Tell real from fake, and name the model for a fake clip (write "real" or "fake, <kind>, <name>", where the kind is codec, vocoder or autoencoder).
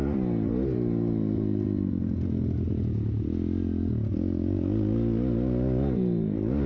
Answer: real